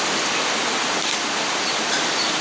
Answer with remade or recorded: recorded